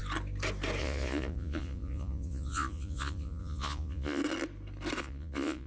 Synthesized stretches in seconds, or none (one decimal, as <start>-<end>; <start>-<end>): 0.8-4.2; 5.0-5.7

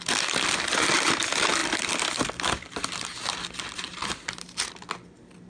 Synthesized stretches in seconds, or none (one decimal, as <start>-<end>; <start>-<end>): none

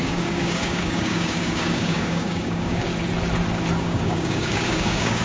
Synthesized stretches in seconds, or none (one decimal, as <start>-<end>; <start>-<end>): 0.0-2.9; 3.8-5.2